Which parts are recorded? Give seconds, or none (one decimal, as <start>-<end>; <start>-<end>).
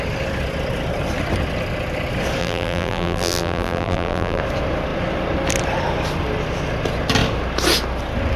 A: 0.0-2.4; 4.4-8.4